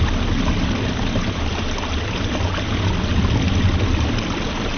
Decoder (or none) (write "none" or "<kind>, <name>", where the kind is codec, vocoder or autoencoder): none